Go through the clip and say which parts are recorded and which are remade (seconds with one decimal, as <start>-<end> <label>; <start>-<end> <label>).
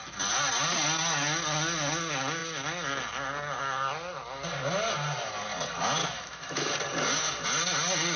0.0-6.0 recorded; 6.0-6.7 remade; 6.7-8.2 recorded